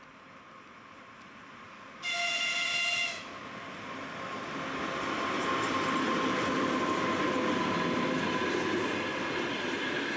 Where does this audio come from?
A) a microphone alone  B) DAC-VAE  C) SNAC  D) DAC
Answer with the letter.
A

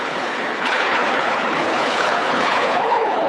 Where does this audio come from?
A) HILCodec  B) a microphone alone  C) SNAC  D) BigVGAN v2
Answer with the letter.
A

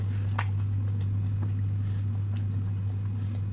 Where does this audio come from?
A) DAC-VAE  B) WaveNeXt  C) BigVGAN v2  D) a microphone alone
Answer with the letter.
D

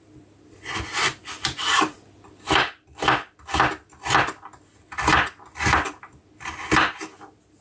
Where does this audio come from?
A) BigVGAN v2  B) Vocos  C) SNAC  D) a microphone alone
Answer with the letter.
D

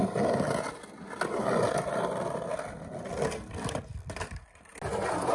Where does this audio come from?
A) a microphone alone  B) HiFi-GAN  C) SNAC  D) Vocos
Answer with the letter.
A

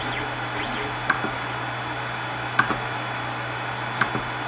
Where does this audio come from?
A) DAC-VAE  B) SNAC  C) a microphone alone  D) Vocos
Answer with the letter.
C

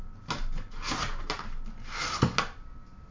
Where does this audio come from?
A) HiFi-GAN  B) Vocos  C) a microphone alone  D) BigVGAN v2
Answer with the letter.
C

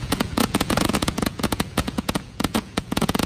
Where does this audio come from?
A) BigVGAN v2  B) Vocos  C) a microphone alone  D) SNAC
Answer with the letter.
B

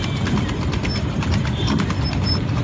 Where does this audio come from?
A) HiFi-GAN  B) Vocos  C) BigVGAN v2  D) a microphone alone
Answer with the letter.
D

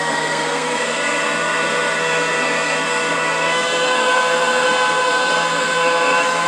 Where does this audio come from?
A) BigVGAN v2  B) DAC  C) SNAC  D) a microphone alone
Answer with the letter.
C